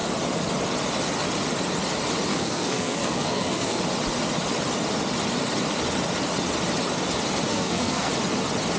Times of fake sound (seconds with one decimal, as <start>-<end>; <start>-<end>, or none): 2.3-3.8; 7.5-8.1